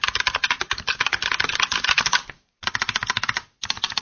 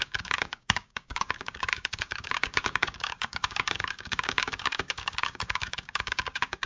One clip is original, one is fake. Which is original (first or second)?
first